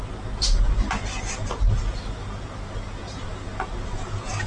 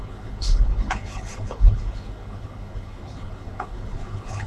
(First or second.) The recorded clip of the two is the first